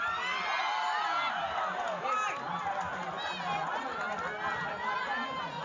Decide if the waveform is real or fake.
real